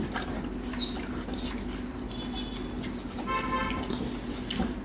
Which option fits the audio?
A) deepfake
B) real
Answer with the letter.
B